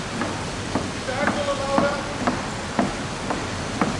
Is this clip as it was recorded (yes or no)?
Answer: yes